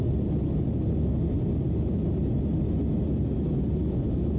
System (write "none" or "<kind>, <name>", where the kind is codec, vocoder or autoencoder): none